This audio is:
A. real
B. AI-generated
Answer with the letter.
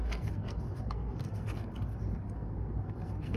B